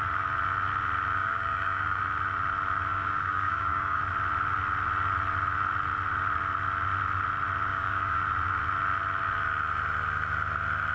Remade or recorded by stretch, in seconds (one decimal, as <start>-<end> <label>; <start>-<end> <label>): 0.0-1.2 recorded; 1.2-2.0 remade; 2.0-2.9 recorded; 2.9-4.0 remade; 4.0-7.7 recorded; 7.7-8.2 remade; 8.2-10.9 recorded